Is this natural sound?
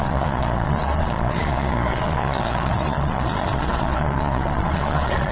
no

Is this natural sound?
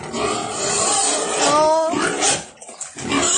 yes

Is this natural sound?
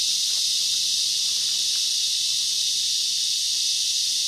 yes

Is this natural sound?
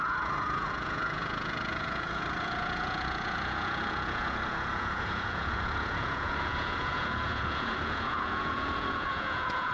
no